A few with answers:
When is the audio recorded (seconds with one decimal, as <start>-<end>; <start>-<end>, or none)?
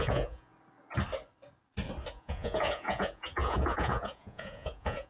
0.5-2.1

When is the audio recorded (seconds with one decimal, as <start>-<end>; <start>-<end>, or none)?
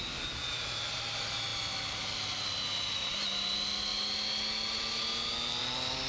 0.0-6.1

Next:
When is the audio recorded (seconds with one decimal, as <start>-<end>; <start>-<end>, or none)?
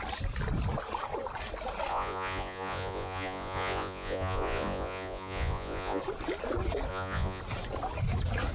0.0-1.9; 6.0-6.9; 7.4-8.5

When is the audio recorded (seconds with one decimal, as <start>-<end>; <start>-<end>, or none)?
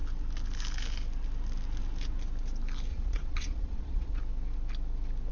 0.0-2.9; 4.2-5.3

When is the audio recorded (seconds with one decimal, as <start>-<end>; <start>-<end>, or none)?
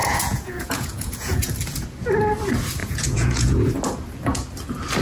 1.5-2.8; 3.7-5.0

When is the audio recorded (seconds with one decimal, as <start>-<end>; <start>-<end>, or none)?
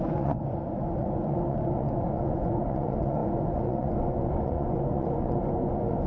none